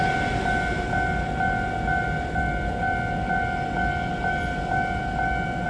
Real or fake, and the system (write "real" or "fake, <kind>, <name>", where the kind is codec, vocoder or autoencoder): real